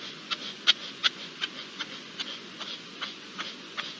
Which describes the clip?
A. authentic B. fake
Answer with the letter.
B